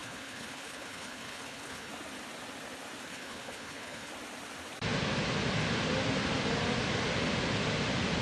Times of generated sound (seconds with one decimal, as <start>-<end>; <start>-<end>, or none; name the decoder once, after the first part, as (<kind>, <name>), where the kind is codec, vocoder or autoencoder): 0.0-1.9 (codec, HILCodec); 3.1-4.1